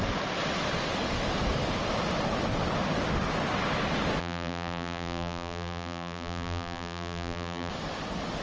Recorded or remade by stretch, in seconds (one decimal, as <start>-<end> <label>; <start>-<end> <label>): 0.0-4.2 recorded; 4.2-7.7 remade; 7.7-8.4 recorded